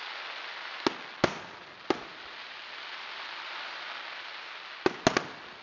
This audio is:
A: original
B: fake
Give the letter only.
A